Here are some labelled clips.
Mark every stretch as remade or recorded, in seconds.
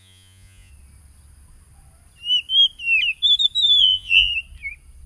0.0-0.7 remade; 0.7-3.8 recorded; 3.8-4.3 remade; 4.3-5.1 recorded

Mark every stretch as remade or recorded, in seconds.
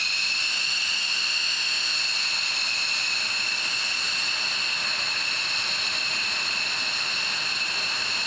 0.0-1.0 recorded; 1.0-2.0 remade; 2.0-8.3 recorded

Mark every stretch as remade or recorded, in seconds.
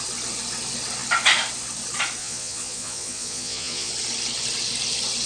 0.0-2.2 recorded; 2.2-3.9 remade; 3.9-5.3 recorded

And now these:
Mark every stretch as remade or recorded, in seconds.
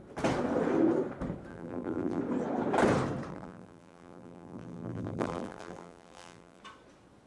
0.0-1.5 recorded; 1.5-2.2 remade; 2.2-3.3 recorded; 3.3-6.6 remade; 6.6-7.3 recorded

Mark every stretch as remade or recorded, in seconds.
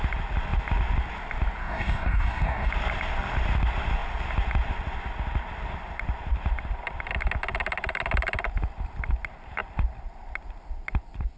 0.0-1.6 recorded; 1.6-2.7 remade; 2.7-11.4 recorded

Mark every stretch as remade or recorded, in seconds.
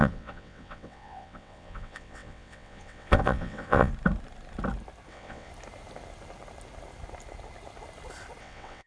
0.0-3.9 remade; 3.9-5.1 recorded; 5.1-5.5 remade; 5.5-8.4 recorded; 8.4-8.9 remade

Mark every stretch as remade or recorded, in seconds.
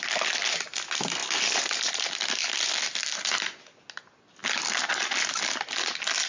0.0-6.3 recorded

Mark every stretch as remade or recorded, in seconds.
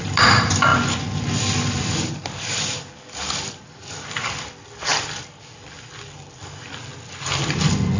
0.0-6.9 remade; 6.9-7.4 recorded; 7.4-8.0 remade